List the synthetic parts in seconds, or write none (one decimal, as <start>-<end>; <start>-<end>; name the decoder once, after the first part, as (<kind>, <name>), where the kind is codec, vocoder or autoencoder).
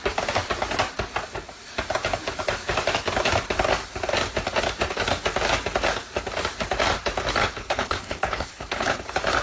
7.4-9.0 (codec, HILCodec)